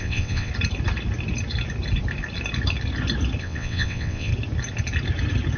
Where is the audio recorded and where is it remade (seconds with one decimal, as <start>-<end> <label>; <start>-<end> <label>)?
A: 0.0-0.5 remade; 0.5-3.4 recorded; 3.4-4.3 remade; 4.3-5.6 recorded